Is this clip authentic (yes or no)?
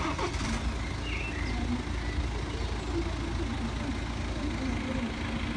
yes